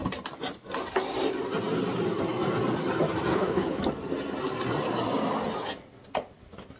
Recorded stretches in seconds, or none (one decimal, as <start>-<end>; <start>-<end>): 0.0-3.3; 3.8-6.8